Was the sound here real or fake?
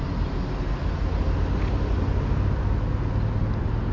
real